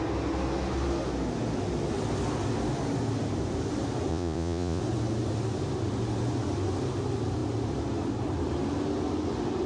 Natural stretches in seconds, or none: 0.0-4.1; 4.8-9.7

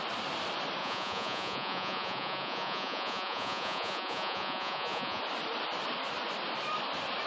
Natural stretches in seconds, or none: 0.0-0.8; 5.2-7.3

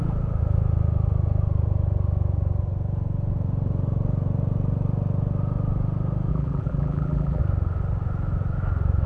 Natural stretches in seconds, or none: 0.0-6.3; 7.4-9.1

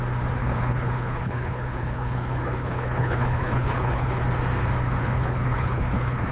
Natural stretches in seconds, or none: 0.0-0.4; 4.2-5.0

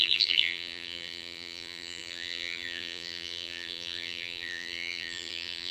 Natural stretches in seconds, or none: none

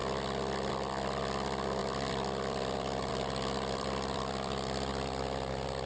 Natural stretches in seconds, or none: 0.0-0.7; 4.9-5.5